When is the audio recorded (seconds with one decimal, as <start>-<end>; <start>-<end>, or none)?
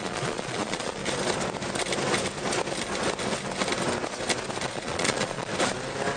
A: 1.0-4.7; 5.5-6.2